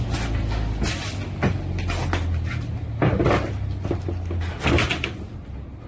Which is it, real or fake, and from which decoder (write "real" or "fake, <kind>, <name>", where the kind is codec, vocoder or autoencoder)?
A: real